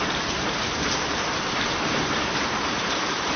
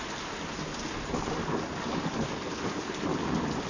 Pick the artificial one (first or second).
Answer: first